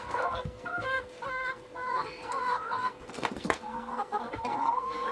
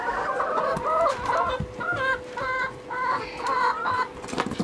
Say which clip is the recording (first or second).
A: second